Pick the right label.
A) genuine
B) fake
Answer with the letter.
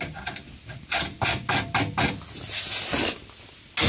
A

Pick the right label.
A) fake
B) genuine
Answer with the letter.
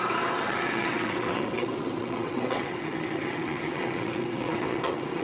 A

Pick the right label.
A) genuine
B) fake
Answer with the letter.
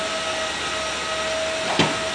A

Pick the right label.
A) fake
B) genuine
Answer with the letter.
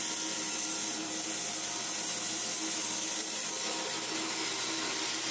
B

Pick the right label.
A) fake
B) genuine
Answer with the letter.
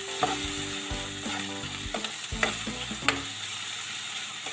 B